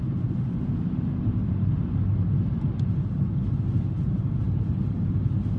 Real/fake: real